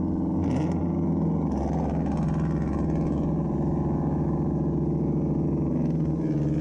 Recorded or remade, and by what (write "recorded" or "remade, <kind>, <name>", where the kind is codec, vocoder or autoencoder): recorded